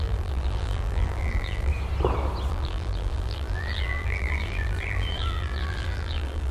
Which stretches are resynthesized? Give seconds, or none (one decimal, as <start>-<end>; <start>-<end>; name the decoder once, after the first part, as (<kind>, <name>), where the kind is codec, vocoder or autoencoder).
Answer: 0.0-1.7 (vocoder, BigVGAN v2); 2.5-6.5